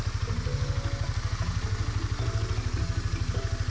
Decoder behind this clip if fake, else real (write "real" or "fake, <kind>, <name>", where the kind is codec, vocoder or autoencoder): real